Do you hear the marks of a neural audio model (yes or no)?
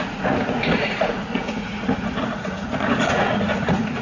yes